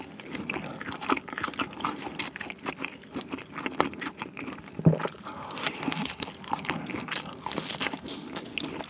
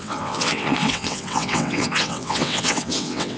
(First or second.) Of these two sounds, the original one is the first